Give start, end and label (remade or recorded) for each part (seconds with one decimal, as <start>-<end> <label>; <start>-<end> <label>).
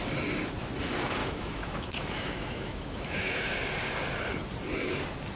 0.0-1.2 recorded; 1.2-3.6 remade; 3.6-5.4 recorded